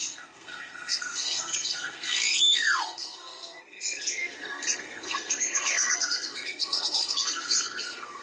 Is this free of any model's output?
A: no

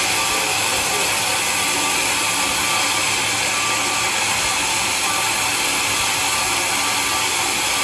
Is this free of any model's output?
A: yes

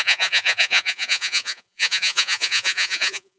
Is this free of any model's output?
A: no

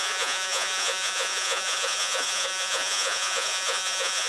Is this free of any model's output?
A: no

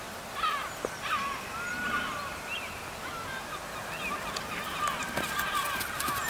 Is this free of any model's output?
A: yes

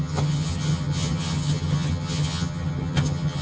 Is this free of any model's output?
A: no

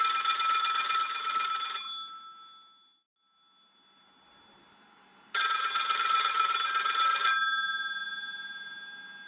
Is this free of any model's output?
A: yes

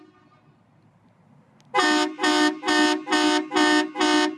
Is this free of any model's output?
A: yes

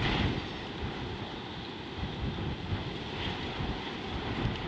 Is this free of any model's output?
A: yes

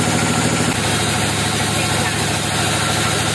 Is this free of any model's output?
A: yes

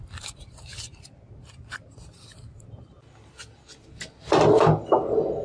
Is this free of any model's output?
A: yes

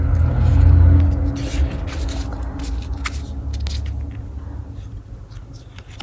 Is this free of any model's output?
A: yes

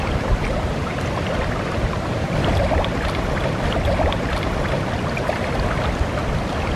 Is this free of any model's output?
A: yes